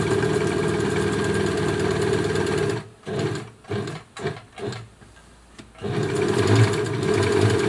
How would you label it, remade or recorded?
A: recorded